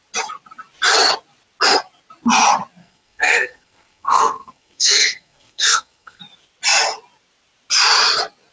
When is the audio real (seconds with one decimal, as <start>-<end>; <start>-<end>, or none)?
0.0-2.8; 6.2-8.5